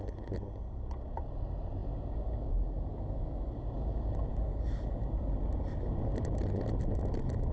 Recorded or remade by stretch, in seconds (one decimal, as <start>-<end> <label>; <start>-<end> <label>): 0.0-2.9 recorded; 2.9-3.5 remade; 3.5-7.5 recorded